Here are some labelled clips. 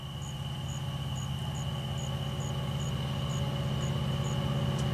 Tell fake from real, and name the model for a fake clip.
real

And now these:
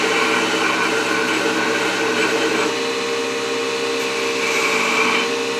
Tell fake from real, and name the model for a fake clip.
real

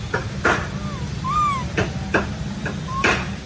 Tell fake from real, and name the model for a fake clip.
real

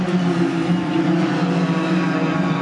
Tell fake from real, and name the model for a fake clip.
real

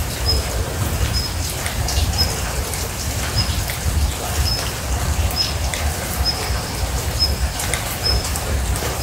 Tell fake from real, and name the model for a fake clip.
real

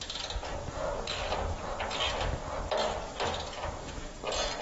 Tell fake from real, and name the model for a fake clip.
real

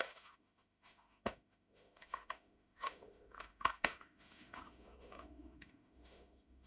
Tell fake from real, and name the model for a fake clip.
fake, autoencoder, DAC-VAE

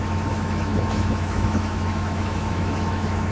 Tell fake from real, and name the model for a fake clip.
fake, autoencoder, DAC-VAE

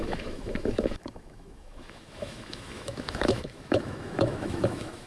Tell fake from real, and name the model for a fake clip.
fake, autoencoder, DAC-VAE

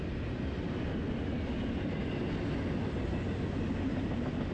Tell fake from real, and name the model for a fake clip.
real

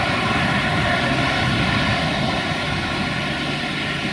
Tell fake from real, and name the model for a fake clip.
real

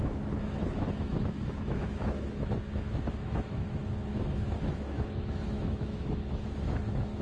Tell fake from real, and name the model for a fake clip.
fake, autoencoder, DAC-VAE